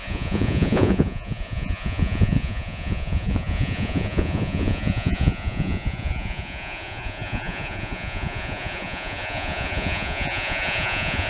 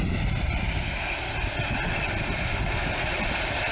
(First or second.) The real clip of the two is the second